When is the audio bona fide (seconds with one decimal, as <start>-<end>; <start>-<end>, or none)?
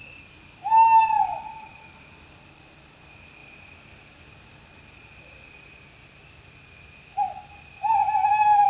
0.0-1.0; 1.9-3.4; 8.0-8.7